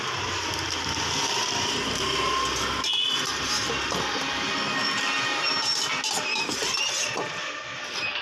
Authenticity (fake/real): real